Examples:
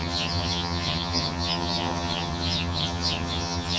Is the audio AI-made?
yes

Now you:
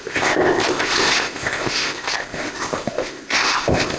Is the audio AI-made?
yes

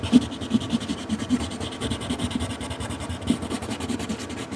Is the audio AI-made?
no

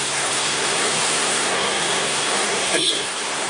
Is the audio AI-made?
yes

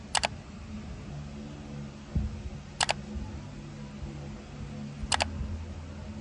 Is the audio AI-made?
no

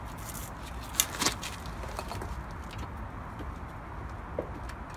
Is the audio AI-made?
no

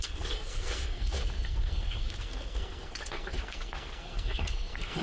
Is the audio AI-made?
yes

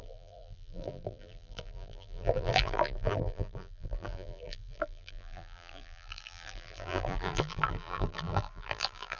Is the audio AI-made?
yes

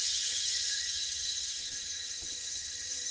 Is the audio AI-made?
yes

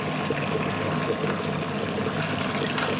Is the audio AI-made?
no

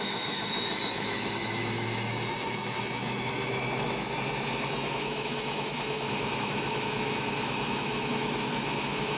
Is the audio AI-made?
yes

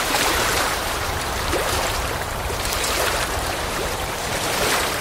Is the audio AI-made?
yes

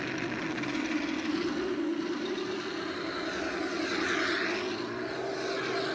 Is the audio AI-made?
no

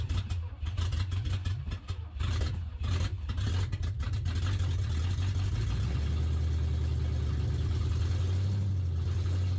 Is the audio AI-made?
no